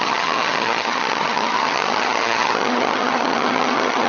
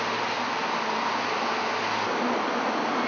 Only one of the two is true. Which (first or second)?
second